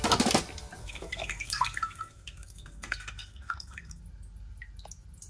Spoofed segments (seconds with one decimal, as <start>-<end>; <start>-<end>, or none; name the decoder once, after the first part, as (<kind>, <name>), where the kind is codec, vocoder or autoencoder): 0.8-4.0 (codec, SNAC)